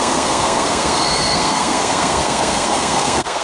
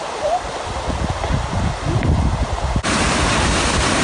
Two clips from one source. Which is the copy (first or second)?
first